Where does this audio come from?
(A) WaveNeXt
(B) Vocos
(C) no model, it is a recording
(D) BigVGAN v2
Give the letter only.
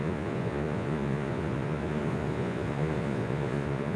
B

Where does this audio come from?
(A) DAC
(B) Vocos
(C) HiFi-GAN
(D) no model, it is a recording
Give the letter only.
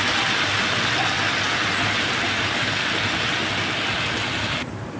D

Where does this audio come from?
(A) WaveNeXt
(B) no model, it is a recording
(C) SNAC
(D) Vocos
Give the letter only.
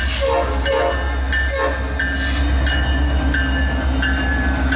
B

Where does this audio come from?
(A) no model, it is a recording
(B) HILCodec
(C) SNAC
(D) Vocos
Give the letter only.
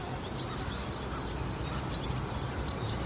A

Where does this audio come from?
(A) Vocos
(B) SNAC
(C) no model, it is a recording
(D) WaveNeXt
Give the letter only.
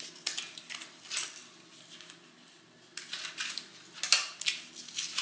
C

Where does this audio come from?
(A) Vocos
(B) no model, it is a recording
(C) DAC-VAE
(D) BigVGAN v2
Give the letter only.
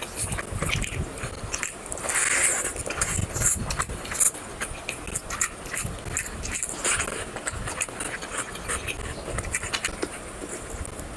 B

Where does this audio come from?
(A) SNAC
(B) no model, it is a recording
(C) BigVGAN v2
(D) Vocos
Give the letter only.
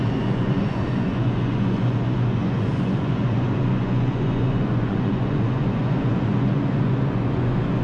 D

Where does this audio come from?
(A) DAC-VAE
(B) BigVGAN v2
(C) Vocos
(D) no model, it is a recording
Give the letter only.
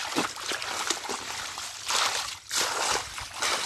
D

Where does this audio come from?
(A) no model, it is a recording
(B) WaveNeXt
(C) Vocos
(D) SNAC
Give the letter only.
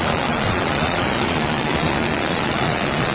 C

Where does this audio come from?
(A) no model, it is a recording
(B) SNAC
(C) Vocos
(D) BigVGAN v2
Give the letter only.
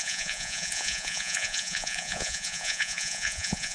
C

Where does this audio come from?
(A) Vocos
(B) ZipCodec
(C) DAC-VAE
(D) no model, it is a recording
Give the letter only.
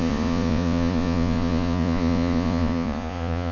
A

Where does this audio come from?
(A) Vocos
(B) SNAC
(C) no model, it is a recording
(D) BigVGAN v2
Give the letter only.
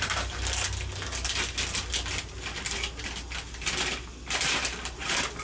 C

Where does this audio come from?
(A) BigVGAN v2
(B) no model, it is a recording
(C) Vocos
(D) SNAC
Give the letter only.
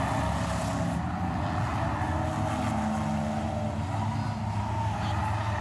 B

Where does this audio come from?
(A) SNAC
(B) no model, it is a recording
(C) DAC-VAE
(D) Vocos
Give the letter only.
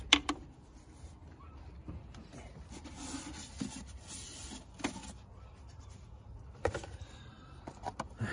B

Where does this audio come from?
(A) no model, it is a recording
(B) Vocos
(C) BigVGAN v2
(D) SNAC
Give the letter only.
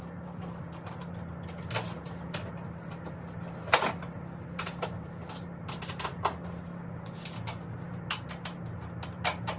A